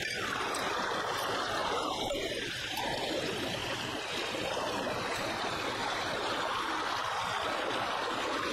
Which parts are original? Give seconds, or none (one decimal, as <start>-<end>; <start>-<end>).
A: 0.0-1.6; 3.1-5.8; 6.7-8.5